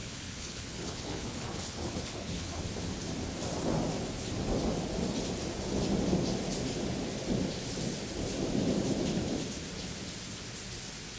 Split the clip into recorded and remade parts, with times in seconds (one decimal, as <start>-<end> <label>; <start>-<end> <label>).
0.0-2.6 remade; 2.6-11.2 recorded